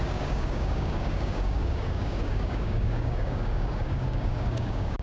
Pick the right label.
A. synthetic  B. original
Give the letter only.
A